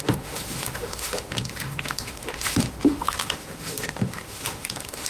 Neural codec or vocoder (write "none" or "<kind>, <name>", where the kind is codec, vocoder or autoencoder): autoencoder, DAC-VAE